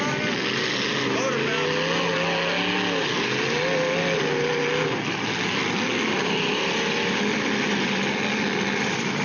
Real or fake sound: real